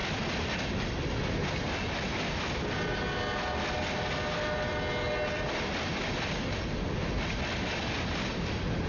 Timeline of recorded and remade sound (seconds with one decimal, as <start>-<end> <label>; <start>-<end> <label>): 0.0-8.9 recorded